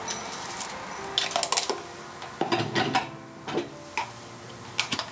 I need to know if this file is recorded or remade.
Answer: recorded